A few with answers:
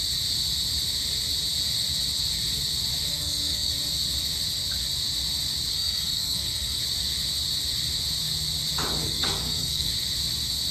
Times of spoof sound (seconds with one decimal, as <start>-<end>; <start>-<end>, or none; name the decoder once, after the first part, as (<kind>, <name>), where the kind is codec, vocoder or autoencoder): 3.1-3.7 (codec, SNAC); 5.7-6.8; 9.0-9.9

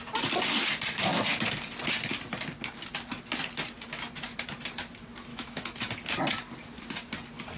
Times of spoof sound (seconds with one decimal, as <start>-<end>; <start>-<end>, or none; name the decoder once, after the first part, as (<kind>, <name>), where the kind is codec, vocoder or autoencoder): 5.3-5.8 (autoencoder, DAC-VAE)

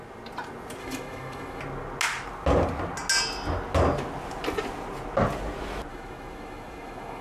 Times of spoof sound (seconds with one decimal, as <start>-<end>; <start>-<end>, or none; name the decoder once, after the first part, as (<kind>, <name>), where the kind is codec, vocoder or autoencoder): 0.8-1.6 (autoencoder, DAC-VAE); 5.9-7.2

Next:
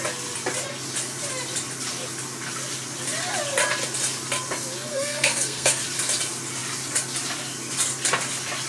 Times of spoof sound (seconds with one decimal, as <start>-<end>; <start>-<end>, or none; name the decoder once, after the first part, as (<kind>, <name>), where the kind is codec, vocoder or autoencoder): 4.9-5.8 (codec, SNAC)

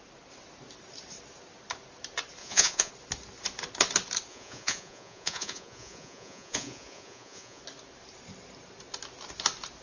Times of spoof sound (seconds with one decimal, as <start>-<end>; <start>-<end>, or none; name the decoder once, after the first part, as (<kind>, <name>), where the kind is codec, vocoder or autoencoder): 2.4-2.9 (vocoder, Vocos); 4.3-7.6

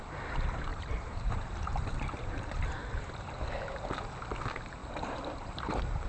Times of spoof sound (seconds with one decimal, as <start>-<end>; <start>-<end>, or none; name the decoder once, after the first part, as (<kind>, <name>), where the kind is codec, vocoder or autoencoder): 0.7-2.6 (vocoder, BigVGAN v2); 4.8-6.1

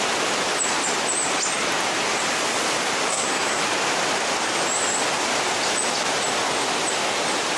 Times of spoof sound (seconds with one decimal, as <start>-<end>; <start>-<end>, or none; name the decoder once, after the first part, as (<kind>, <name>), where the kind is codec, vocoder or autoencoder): 3.1-3.6 (codec, SNAC)